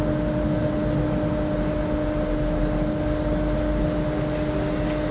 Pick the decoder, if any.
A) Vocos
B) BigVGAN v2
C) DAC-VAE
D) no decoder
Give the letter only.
D